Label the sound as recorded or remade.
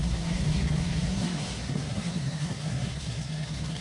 remade